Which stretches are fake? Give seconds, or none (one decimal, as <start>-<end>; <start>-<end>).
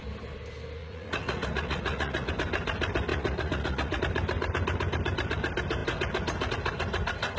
0.8-2.3; 3.1-4.0